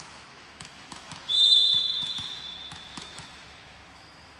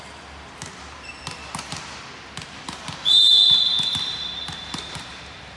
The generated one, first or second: first